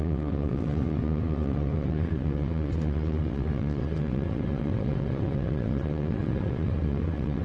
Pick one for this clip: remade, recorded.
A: remade